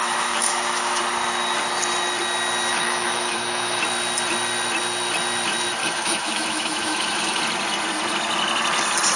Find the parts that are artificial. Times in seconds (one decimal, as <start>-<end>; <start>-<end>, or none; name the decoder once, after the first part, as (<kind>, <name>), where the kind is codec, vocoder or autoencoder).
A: 0.0-1.0 (autoencoder, DAC-VAE); 2.7-3.8; 5.8-7.4